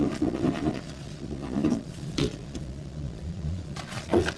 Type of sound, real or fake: fake